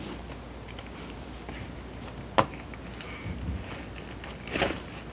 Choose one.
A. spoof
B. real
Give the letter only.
B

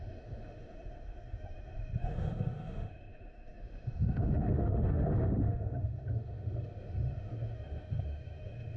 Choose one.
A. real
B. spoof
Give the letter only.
B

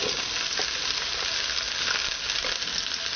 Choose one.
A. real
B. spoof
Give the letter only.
A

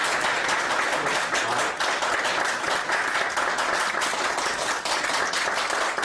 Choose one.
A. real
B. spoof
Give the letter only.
A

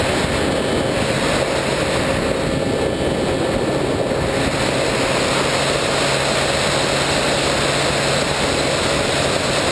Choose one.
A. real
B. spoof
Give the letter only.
A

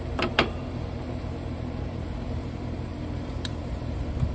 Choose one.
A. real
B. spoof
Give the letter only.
B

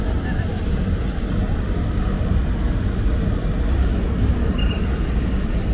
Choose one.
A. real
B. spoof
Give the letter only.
A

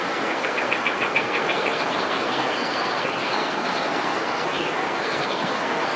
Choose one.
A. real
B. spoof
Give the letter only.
B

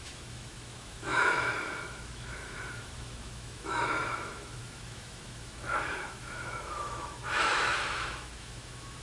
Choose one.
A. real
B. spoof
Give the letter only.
B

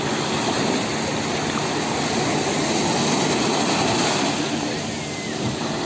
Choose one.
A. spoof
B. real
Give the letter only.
B